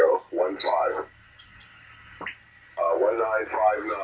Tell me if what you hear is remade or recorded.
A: recorded